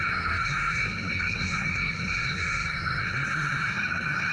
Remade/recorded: remade